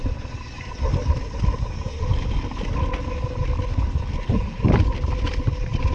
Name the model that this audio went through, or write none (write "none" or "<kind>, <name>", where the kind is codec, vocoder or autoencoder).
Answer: none